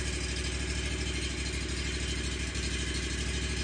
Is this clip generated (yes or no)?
no